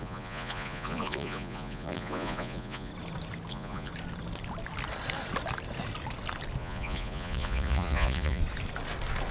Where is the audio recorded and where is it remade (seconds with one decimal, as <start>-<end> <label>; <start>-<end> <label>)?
0.0-2.9 remade; 2.9-3.5 recorded; 3.5-3.9 remade; 3.9-6.6 recorded; 6.6-8.4 remade; 8.4-9.3 recorded